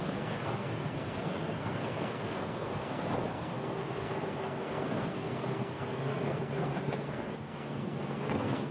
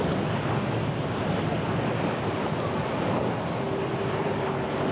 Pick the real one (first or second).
second